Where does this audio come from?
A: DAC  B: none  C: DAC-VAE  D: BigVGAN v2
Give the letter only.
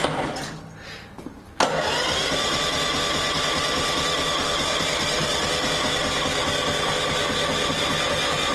B